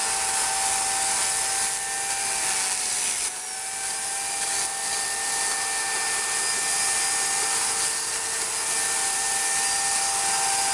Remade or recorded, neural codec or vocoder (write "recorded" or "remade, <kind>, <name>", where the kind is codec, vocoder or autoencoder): recorded